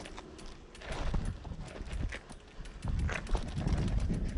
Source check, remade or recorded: recorded